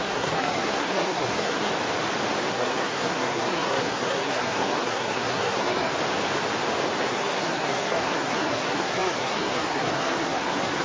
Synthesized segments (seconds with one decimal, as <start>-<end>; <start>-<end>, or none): 0.0-1.7; 2.5-5.9; 7.0-10.8